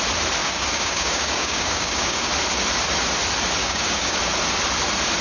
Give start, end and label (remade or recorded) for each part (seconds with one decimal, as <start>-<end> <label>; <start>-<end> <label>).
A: 0.0-0.4 recorded; 0.4-2.3 remade; 2.3-3.6 recorded; 3.6-4.2 remade; 4.2-5.2 recorded